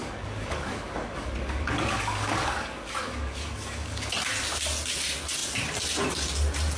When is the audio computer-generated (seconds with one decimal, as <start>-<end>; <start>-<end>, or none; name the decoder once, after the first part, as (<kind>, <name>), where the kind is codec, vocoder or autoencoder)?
0.0-4.1 (codec, DAC)